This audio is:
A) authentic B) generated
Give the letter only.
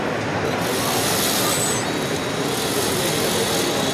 A